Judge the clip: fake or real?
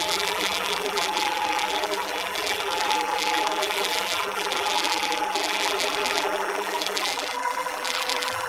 fake